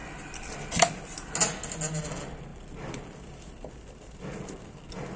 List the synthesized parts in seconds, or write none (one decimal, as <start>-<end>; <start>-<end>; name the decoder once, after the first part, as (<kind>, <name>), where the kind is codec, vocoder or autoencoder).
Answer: none